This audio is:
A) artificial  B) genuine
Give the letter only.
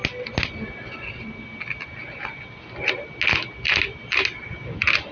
B